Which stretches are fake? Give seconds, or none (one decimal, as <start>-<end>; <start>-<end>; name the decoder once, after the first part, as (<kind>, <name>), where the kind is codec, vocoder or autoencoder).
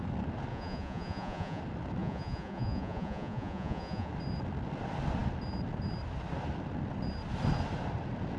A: 0.5-1.6 (vocoder, Vocos); 2.0-4.1